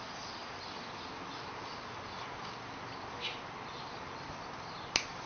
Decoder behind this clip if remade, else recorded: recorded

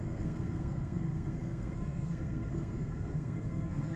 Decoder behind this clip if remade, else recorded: remade, codec, SNAC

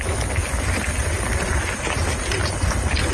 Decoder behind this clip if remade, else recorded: recorded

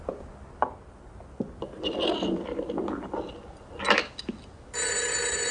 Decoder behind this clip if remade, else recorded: recorded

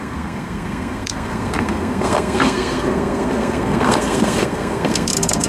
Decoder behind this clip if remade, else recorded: remade, codec, SNAC